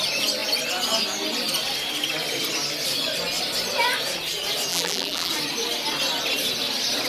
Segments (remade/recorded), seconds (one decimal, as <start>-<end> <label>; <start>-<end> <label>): 0.0-4.7 recorded; 4.7-5.3 remade; 5.3-7.1 recorded